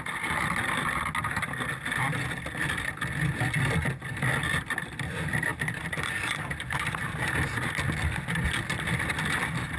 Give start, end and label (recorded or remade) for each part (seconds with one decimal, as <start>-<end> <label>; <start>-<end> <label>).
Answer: 0.0-5.5 recorded; 5.5-7.3 remade; 7.3-9.8 recorded